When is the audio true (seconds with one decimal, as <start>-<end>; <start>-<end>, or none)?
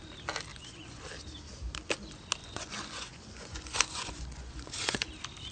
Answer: 0.0-0.5; 1.0-2.4; 5.1-5.5